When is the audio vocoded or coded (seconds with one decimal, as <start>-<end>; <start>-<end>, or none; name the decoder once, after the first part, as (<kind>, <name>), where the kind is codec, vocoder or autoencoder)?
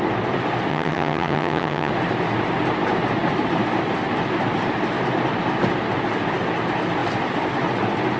0.7-1.9 (vocoder, HiFi-GAN)